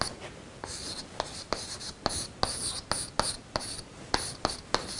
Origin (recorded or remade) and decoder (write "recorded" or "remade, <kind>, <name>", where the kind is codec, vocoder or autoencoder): recorded